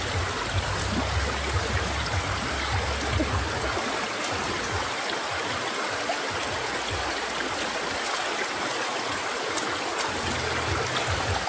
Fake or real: real